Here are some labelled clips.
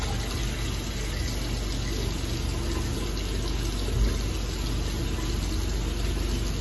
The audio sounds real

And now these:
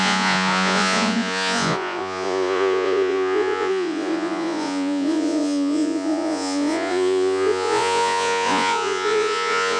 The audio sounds fake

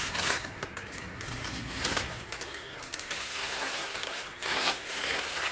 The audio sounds fake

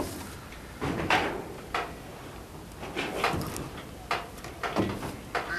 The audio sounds real